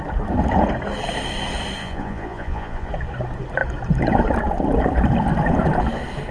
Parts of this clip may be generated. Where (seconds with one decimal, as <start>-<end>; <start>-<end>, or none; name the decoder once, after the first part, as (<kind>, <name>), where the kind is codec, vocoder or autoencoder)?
1.8-2.9 (vocoder, Vocos)